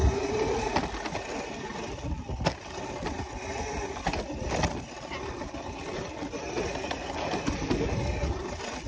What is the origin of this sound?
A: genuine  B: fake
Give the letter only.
A